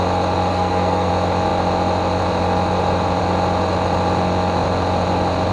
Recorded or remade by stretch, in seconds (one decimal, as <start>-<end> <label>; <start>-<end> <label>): 0.0-0.5 recorded; 0.5-1.1 remade; 1.1-5.5 recorded